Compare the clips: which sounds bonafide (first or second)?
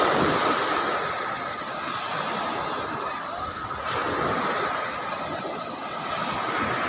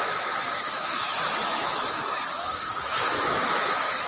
first